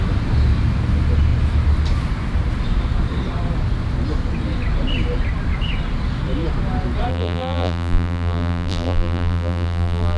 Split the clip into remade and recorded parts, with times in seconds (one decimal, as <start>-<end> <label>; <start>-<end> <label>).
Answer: 0.0-7.1 recorded; 7.1-10.2 remade